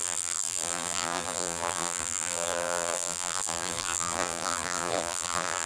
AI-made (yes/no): yes